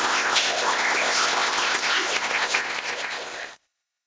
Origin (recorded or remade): remade